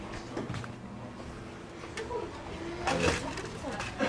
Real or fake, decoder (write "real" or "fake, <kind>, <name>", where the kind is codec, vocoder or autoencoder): real